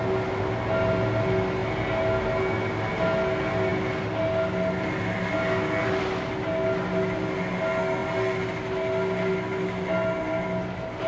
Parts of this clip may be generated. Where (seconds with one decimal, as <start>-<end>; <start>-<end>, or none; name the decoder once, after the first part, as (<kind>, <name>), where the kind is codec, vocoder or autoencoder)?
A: none